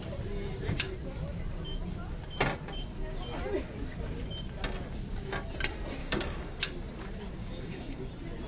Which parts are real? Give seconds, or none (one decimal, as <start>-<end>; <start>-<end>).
0.0-6.0; 6.6-7.4; 8.1-8.5